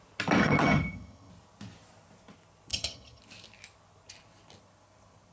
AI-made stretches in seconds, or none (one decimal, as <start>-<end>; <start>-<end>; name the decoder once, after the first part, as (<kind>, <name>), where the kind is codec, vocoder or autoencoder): 0.4-1.3 (vocoder, HiFi-GAN); 2.7-3.2